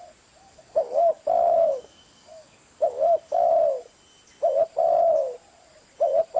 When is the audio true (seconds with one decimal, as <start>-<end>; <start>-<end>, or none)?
0.0-0.4; 1.2-1.6; 3.5-6.4